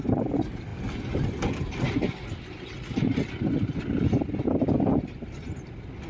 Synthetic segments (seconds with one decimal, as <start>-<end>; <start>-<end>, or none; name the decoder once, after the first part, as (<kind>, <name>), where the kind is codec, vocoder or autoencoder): none